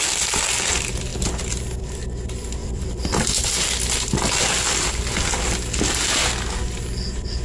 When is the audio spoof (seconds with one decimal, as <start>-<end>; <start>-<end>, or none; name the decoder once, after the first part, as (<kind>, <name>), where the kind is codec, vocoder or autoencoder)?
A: 2.6-5.3 (vocoder, BigVGAN v2)